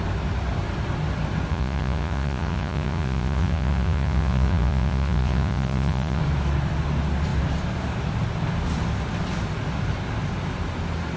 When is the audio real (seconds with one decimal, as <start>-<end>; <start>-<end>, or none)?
0.0-1.5; 6.2-11.2